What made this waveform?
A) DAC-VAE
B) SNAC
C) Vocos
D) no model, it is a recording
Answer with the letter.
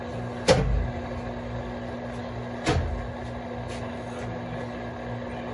D